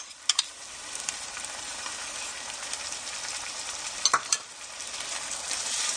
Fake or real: real